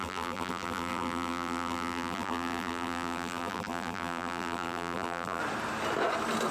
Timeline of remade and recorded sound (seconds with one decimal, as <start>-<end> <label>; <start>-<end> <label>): 0.0-5.4 remade; 5.4-6.5 recorded